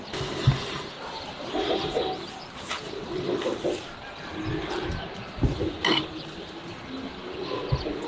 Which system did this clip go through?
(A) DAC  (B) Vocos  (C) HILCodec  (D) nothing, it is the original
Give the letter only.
D